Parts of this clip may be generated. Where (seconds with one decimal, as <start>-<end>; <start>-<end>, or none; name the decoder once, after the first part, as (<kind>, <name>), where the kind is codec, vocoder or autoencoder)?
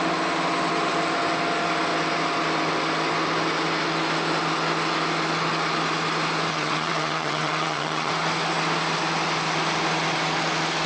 6.5-8.1 (vocoder, HiFi-GAN)